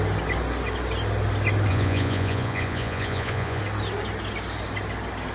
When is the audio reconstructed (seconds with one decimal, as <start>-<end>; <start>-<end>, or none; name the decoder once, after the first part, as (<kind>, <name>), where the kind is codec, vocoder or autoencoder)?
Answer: 1.7-3.6 (vocoder, Vocos)